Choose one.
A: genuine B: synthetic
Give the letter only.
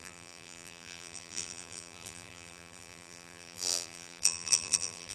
B